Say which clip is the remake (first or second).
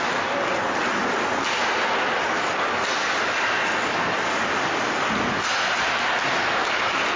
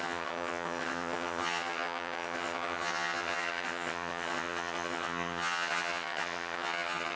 second